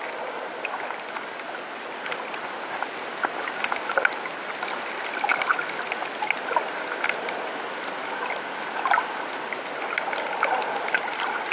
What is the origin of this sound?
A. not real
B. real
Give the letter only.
B